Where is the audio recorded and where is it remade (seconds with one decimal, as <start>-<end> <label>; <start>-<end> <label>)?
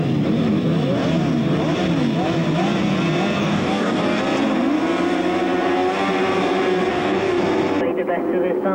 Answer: 0.0-3.4 recorded; 3.4-4.2 remade; 4.2-6.9 recorded; 6.9-7.4 remade; 7.4-8.7 recorded